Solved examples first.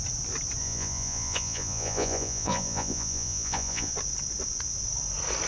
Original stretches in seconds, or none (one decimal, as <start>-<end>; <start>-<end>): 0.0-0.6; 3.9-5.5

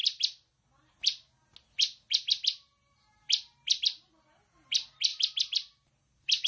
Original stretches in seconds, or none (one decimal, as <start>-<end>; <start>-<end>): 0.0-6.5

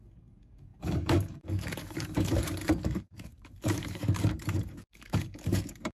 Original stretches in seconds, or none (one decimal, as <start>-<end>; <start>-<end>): none

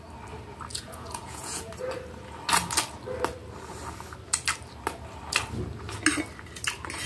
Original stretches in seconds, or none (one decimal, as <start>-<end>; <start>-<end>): 0.0-0.7; 1.7-7.1

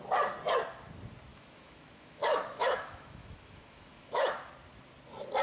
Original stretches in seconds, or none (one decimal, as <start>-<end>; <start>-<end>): 0.0-1.3; 4.5-5.4

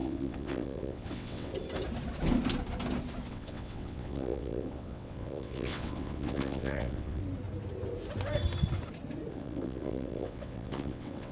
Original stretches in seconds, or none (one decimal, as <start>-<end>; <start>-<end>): 1.5-3.3; 7.2-9.3

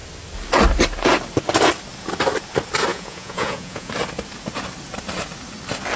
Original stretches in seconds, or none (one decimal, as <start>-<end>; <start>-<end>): 0.0-2.9; 3.9-6.0